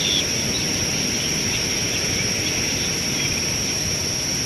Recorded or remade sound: recorded